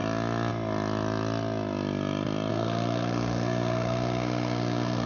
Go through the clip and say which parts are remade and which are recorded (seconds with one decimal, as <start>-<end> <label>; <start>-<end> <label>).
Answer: 0.0-2.5 recorded; 2.5-5.1 remade